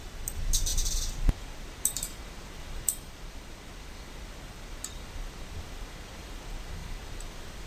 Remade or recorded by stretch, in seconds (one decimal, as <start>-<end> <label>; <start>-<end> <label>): 0.0-7.7 recorded